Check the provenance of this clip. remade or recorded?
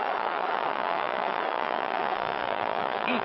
remade